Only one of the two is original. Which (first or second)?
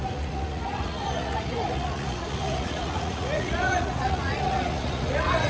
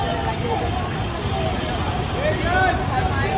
second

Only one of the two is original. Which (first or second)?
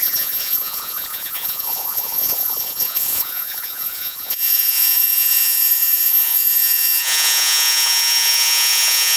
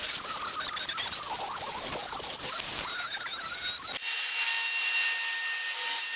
second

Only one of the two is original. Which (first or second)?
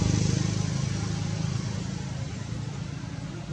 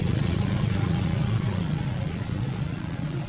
first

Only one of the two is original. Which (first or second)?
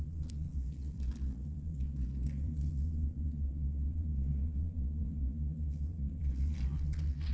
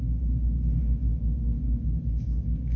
second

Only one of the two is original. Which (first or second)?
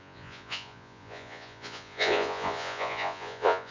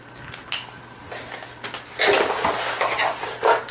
second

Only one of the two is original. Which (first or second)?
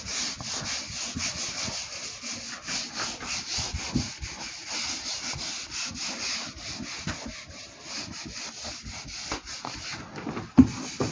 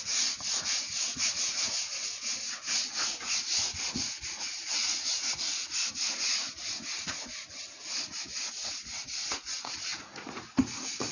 first